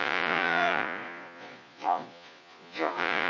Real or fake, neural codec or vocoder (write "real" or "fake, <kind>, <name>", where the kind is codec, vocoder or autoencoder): fake, vocoder, Vocos